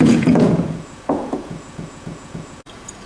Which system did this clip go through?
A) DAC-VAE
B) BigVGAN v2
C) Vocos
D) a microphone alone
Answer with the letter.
C